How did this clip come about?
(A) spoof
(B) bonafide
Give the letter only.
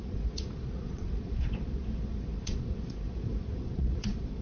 A